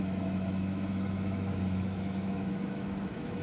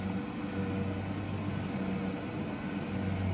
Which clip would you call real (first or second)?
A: second